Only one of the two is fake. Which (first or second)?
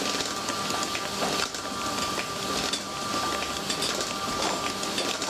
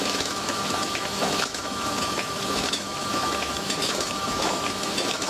second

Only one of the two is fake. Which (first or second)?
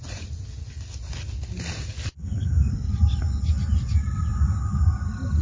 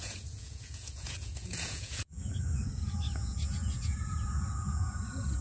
second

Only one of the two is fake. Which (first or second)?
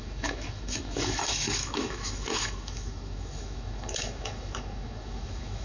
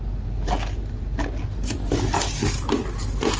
first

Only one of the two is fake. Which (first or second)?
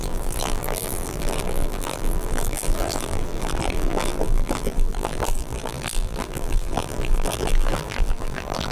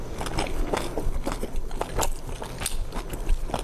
first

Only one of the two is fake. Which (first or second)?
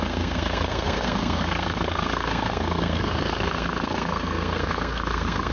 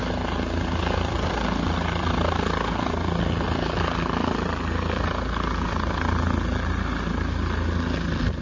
first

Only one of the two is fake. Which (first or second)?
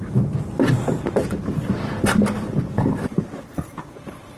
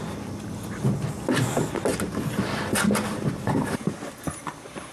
first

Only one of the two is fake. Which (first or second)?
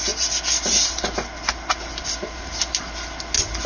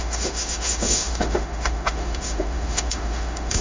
second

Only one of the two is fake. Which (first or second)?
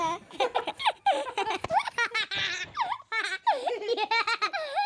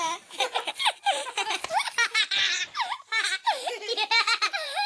second